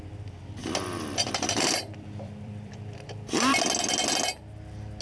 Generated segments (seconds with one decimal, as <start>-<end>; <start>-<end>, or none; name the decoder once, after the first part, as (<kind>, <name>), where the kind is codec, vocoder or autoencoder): 0.6-3.6 (vocoder, BigVGAN v2)